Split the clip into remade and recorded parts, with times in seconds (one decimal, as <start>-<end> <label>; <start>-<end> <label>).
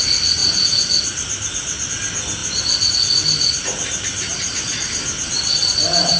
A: 0.0-3.6 recorded; 3.6-5.6 remade; 5.6-6.2 recorded